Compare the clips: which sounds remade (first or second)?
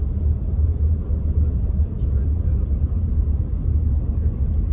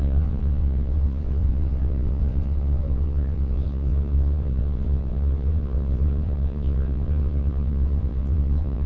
second